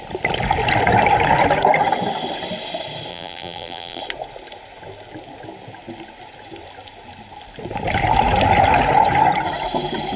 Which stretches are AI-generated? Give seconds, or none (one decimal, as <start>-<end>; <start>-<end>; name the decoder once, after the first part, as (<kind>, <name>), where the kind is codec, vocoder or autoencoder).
3.1-4.0 (vocoder, BigVGAN v2)